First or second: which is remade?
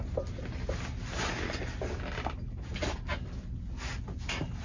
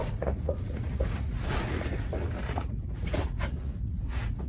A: second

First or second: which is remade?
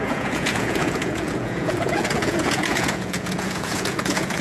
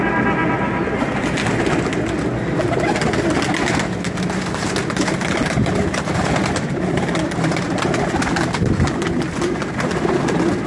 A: first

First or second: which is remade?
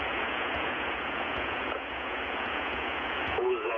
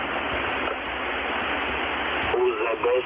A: first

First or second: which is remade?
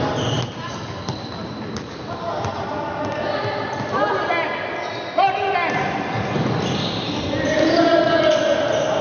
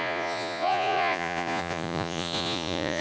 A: second